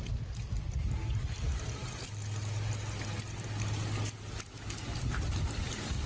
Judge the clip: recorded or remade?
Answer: recorded